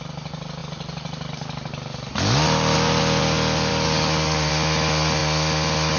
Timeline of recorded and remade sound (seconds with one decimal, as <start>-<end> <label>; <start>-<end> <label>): 0.0-3.7 recorded; 3.7-4.5 remade; 4.5-6.0 recorded